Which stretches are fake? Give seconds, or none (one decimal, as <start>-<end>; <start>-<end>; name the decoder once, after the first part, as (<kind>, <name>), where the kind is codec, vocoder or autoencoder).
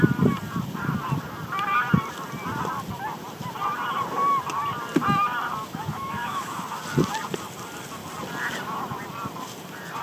5.6-6.8 (autoencoder, DAC-VAE)